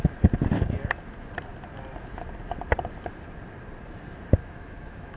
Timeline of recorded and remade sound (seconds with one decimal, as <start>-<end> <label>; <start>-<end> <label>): 0.0-4.4 recorded; 4.4-5.2 remade